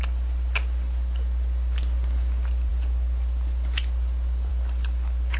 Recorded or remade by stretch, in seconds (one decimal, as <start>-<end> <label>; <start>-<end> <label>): 0.0-5.4 recorded